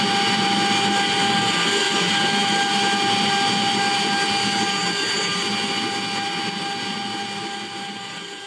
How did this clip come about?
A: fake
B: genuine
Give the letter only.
B